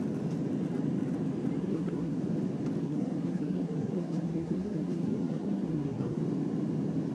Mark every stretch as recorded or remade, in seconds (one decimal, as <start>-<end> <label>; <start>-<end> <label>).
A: 0.0-1.6 recorded; 1.6-2.2 remade; 2.2-2.8 recorded; 2.8-6.2 remade; 6.2-7.1 recorded